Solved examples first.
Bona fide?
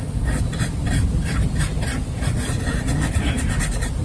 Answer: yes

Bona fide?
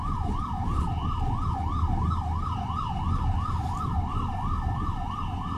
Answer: yes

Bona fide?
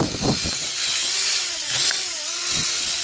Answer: no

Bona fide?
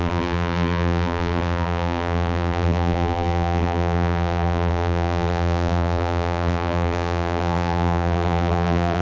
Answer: no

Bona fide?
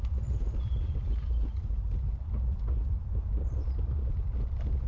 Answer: no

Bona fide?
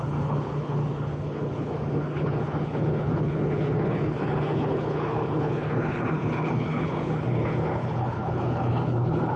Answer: no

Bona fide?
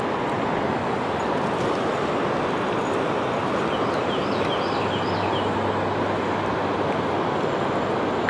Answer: yes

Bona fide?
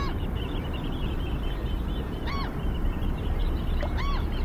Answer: no